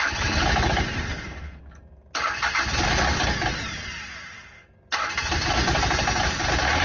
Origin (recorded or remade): recorded